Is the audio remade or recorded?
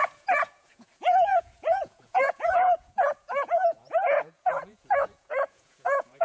remade